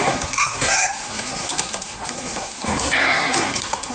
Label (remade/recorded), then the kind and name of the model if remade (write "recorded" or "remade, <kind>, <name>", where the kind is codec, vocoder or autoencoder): remade, codec, SNAC